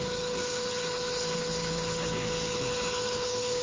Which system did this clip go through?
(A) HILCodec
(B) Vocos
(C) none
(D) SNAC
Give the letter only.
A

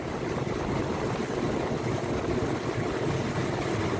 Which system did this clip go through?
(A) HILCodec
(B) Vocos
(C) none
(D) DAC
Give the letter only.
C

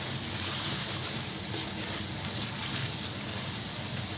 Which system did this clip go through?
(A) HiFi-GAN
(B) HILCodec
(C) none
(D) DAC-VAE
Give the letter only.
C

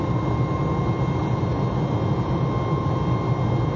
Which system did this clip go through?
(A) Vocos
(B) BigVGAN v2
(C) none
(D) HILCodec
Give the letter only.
C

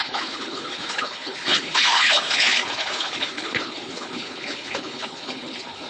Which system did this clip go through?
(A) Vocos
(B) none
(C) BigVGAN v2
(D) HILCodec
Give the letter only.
D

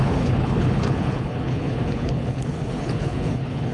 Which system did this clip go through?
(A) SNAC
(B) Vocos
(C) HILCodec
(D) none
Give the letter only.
C